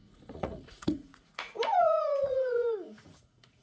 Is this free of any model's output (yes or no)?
no